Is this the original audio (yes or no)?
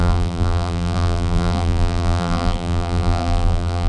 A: no